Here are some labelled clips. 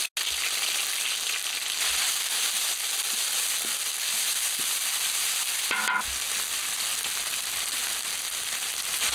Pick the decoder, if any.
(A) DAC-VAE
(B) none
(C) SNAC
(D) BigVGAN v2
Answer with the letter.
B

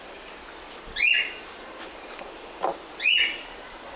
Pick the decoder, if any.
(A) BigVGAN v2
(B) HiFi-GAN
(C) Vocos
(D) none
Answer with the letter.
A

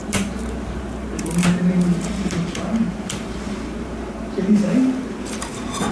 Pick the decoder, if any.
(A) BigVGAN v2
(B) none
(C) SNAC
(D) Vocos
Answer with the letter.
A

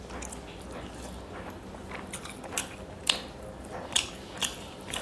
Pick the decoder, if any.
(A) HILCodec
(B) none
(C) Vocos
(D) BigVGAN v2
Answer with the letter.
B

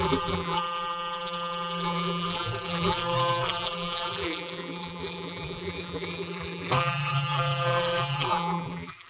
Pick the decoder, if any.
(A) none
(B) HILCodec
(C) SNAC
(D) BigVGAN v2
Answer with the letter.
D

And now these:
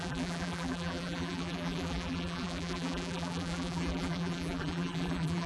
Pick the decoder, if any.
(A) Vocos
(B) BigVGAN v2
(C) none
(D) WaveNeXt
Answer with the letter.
B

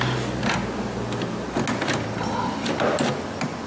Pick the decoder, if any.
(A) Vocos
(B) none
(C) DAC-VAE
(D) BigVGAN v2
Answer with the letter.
B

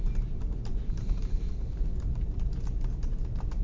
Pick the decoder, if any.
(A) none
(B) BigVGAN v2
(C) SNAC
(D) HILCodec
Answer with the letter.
B